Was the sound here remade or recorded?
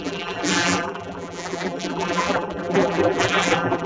remade